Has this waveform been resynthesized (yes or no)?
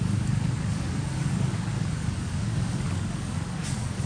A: yes